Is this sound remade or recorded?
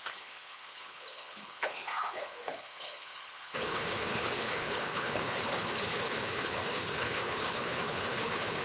remade